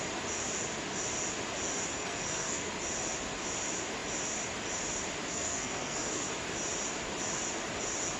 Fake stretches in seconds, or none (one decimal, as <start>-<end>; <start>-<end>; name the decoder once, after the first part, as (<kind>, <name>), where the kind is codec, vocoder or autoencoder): 1.9-2.7 (codec, SNAC); 5.3-6.3